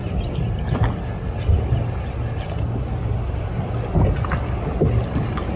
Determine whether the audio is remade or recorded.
recorded